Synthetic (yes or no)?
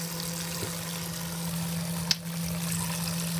no